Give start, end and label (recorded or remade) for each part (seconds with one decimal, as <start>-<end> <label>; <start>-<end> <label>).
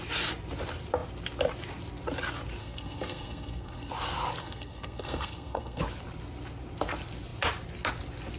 0.0-2.6 recorded; 2.6-3.9 remade; 3.9-4.4 recorded; 4.4-5.8 remade; 5.8-8.4 recorded